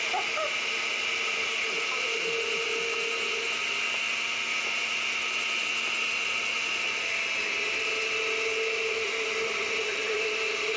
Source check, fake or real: real